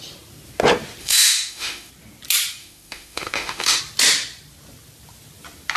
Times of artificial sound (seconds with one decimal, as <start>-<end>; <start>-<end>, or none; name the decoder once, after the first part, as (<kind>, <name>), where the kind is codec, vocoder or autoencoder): 1.0-1.9 (autoencoder, DAC-VAE); 2.6-3.8